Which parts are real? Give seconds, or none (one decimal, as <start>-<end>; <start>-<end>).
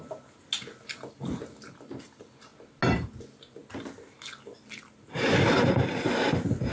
0.0-6.7